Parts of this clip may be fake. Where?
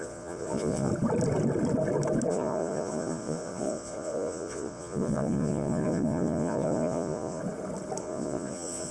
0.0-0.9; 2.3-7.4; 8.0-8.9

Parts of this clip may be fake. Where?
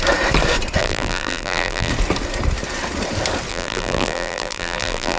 0.8-1.9; 3.5-5.2